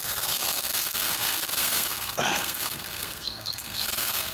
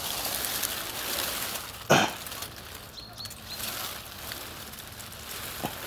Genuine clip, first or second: second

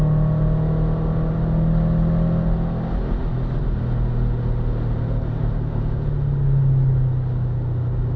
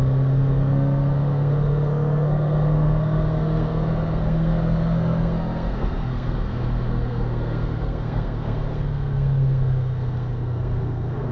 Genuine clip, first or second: first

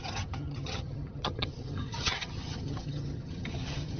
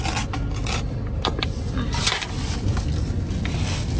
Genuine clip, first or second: second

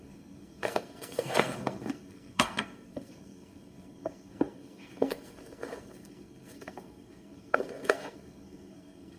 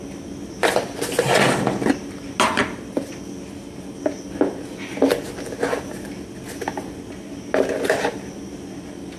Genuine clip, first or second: second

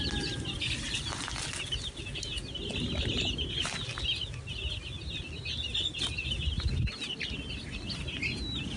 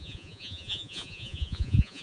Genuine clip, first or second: first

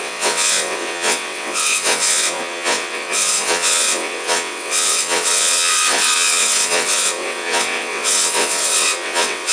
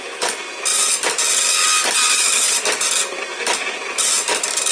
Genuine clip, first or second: second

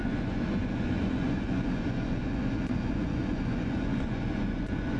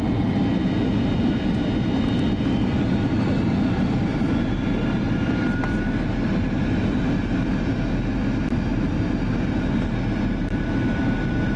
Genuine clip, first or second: second